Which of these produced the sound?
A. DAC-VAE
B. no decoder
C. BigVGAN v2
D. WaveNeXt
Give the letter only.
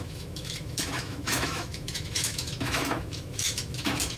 A